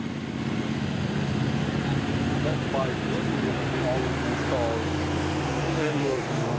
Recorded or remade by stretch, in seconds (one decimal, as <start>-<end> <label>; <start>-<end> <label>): 0.0-5.6 recorded; 5.6-6.6 remade